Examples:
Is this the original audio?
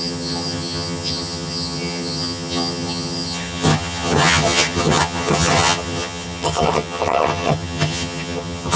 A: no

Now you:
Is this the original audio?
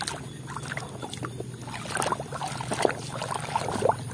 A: yes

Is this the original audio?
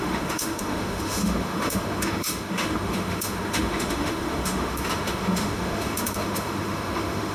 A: no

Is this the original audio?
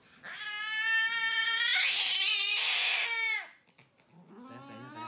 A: yes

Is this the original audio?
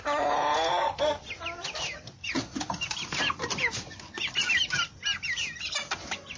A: yes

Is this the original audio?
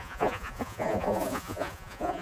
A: no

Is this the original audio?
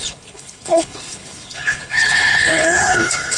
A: no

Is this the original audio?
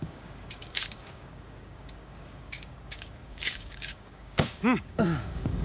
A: no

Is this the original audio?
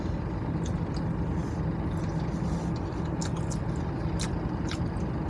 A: yes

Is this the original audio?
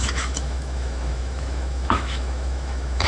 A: no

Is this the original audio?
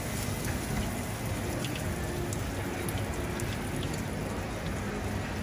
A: yes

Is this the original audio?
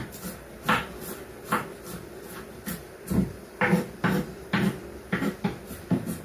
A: no